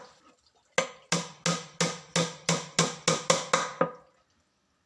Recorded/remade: recorded